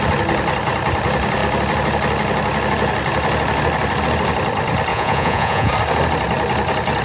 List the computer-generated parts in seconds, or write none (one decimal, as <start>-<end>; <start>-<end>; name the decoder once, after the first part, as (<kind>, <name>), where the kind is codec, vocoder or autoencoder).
4.9-5.7 (vocoder, Vocos)